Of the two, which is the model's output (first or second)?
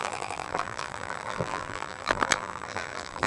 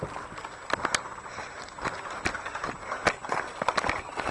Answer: first